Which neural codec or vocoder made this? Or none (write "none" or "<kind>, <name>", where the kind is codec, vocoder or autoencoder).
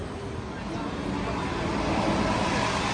none